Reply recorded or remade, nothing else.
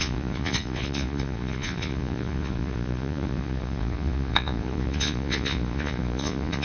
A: remade